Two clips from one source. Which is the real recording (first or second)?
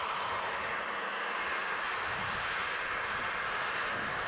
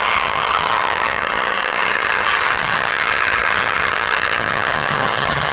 first